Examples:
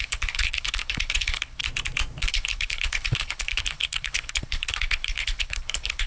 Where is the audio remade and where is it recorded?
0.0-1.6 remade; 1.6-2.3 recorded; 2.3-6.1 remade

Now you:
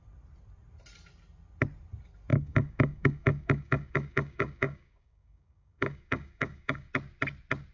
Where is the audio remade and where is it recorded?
0.0-2.3 recorded; 2.3-6.9 remade; 6.9-7.7 recorded

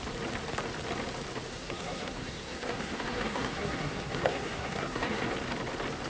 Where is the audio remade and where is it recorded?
0.0-1.5 recorded; 1.5-5.2 remade; 5.2-6.1 recorded

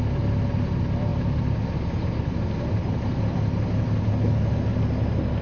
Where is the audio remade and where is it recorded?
0.0-5.4 recorded

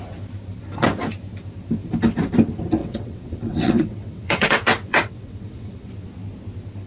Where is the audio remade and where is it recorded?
0.0-2.8 recorded; 2.8-5.9 remade; 5.9-6.9 recorded

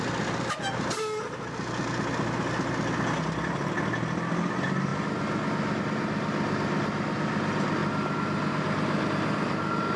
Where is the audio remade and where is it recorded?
0.0-10.0 recorded

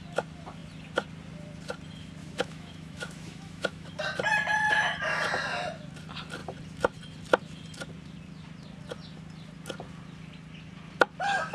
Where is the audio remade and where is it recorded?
0.0-2.2 recorded; 2.2-3.9 remade; 3.9-11.5 recorded

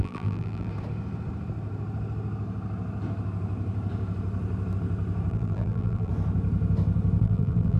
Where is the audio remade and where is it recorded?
0.0-0.7 remade; 0.7-5.3 recorded; 5.3-6.1 remade; 6.1-7.2 recorded; 7.2-7.8 remade